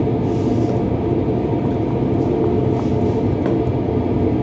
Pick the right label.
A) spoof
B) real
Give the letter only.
B